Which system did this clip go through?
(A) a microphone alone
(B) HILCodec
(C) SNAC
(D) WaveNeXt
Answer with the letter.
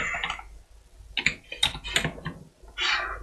A